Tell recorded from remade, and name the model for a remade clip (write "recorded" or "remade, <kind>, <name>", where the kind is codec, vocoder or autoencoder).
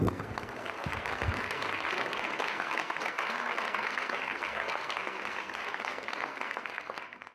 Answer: remade, codec, SNAC